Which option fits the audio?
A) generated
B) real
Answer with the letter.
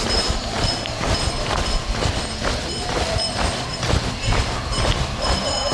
B